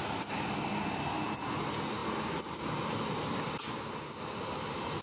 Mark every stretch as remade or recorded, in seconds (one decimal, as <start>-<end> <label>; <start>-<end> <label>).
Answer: 0.0-5.0 recorded